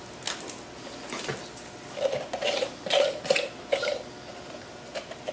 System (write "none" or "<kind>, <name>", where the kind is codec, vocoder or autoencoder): none